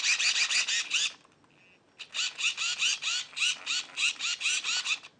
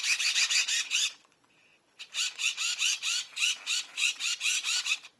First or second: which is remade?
second